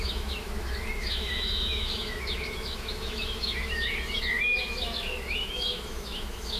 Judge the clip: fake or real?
fake